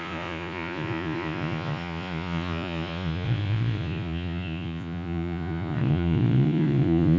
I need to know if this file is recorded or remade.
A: remade